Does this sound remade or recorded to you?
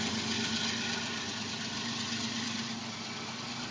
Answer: recorded